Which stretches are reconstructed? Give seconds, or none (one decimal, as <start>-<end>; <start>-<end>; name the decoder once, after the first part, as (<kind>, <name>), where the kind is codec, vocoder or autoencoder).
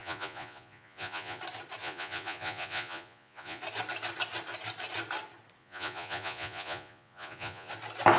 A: 0.0-1.4 (vocoder, Vocos); 1.8-3.6; 5.6-7.7